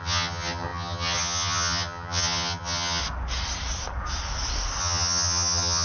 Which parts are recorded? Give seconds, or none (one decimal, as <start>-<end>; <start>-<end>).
3.0-4.8

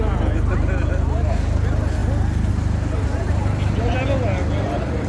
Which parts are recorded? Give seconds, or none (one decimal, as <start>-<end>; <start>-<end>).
0.0-5.1